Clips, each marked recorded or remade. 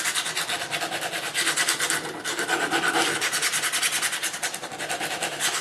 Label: recorded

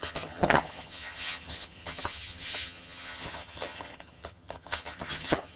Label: remade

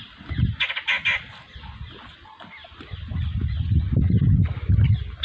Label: recorded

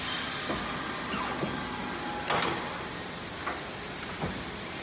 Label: recorded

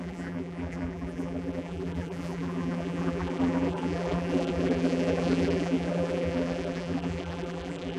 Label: remade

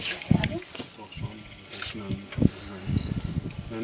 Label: recorded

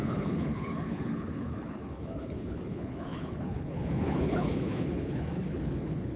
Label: remade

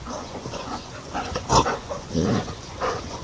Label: remade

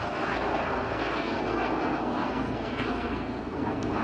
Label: remade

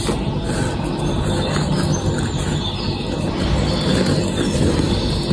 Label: recorded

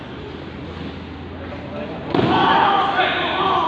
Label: recorded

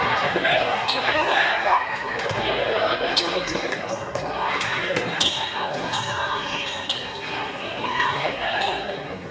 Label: remade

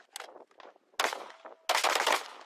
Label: recorded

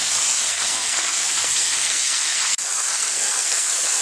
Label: remade